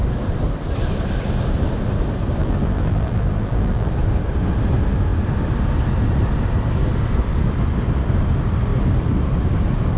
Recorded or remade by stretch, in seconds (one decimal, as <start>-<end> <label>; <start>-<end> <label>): 0.0-2.4 recorded; 2.4-3.9 remade; 3.9-10.0 recorded